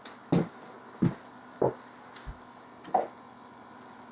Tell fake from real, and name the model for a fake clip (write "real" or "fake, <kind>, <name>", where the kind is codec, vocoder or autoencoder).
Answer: real